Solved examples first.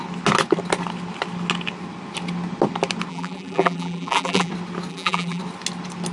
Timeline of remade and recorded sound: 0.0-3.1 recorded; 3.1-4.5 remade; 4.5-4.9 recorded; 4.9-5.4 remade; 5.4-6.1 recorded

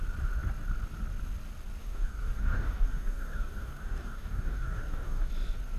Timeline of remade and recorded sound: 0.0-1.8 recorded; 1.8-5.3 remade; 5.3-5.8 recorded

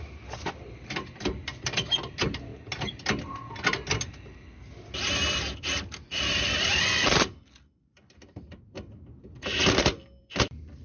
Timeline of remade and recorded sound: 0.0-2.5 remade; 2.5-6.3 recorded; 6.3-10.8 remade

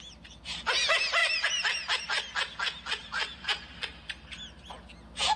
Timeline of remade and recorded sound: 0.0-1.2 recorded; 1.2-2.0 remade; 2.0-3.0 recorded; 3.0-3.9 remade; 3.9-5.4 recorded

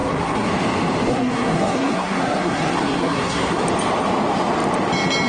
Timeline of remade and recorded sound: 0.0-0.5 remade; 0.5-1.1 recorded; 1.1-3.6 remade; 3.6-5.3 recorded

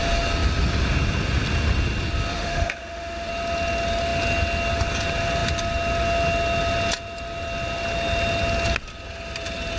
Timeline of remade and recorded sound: 0.0-2.3 recorded; 2.3-3.3 remade; 3.3-9.8 recorded